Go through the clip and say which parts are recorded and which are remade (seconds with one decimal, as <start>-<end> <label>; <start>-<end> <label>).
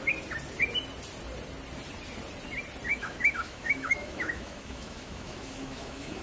0.0-2.9 recorded; 2.9-6.2 remade